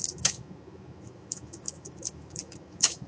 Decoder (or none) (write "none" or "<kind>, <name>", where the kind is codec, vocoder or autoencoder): autoencoder, DAC-VAE